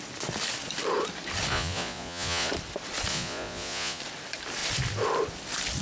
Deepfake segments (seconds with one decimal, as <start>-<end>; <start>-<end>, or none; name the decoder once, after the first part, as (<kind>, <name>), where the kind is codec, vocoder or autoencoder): 1.5-2.5 (vocoder, Vocos); 3.1-4.0